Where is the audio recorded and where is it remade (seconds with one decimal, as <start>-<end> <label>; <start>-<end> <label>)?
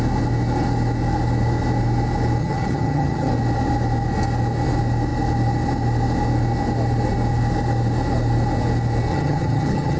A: 0.0-2.4 recorded; 2.4-3.3 remade; 3.3-9.1 recorded; 9.1-10.0 remade